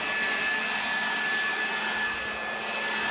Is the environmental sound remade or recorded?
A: recorded